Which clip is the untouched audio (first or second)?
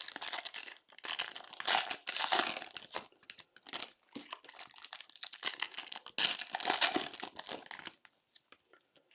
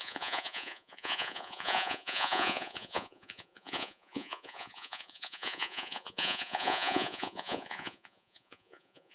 first